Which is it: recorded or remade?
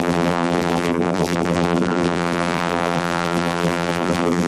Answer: remade